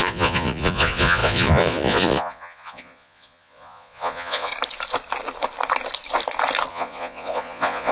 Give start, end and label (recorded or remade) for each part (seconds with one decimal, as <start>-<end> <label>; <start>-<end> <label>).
0.0-4.5 remade; 4.5-6.7 recorded; 6.7-7.9 remade